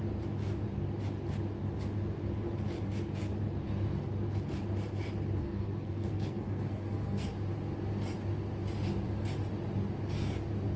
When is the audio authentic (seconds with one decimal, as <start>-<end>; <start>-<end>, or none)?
0.0-5.4; 7.3-10.8